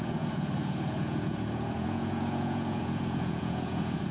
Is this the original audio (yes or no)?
no